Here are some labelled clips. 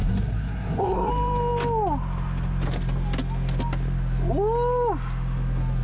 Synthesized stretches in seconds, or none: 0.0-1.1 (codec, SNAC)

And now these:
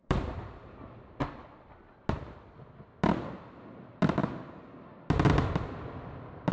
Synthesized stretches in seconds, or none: none

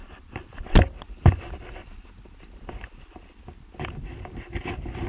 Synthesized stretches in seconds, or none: none

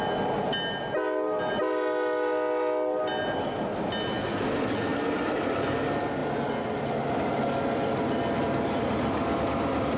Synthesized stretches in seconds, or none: none